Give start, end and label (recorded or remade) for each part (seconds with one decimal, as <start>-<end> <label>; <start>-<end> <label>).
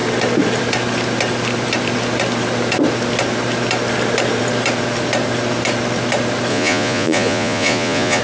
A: 0.0-6.5 recorded; 6.5-8.2 remade